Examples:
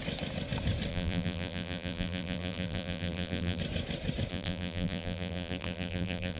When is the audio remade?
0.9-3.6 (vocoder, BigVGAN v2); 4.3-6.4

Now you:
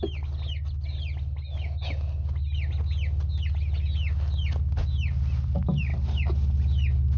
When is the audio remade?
none

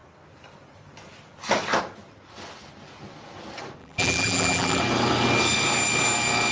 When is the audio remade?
3.8-4.8 (vocoder, BigVGAN v2)

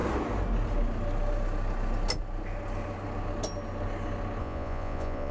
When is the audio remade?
4.4-5.3 (vocoder, Vocos)